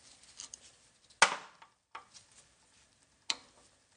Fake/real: real